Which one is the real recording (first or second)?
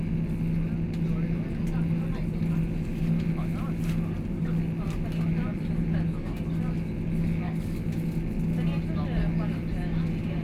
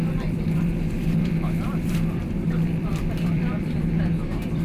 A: first